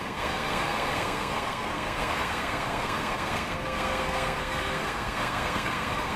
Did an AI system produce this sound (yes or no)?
yes